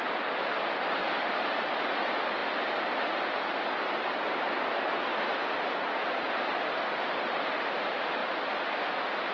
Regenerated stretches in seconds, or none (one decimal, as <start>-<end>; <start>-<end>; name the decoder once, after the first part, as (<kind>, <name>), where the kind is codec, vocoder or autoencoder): 1.0-1.6 (vocoder, BigVGAN v2); 8.2-8.8